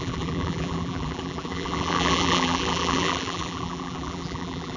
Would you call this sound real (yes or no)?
no